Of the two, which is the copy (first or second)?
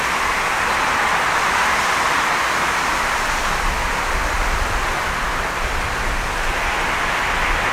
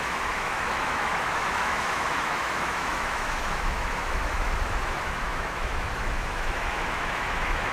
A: second